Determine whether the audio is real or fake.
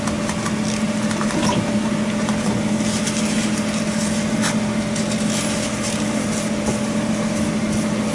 real